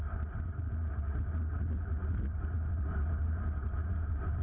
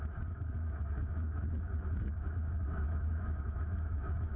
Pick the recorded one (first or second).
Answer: first